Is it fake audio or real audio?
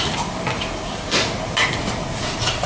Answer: real